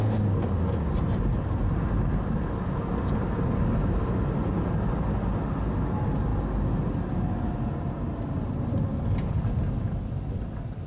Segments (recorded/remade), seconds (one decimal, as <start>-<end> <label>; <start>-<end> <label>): 0.0-10.9 recorded